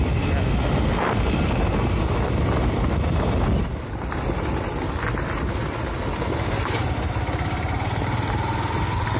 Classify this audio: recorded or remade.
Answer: recorded